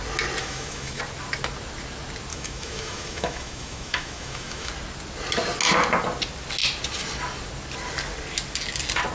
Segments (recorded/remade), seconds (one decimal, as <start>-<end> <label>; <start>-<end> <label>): 0.0-0.4 recorded; 0.4-1.0 remade; 1.0-2.3 recorded; 2.3-4.7 remade; 4.7-9.1 recorded